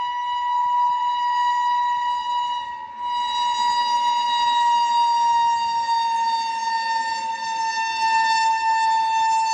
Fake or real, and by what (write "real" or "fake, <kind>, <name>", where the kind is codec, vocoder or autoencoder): real